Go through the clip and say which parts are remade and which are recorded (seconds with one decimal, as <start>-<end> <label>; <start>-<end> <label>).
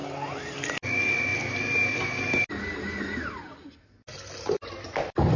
0.0-5.4 recorded